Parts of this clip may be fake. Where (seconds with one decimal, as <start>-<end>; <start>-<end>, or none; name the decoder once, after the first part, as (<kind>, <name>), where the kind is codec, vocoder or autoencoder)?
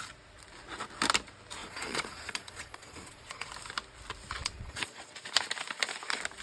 1.6-3.5 (vocoder, Vocos); 4.4-5.0